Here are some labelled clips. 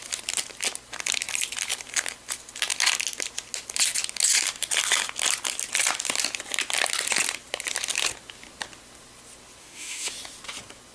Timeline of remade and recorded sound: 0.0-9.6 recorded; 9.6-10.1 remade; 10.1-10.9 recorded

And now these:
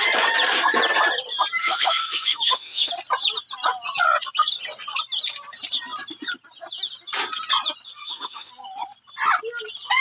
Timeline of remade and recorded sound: 0.0-1.6 recorded; 1.6-2.9 remade; 2.9-8.0 recorded; 8.0-8.5 remade; 8.5-10.0 recorded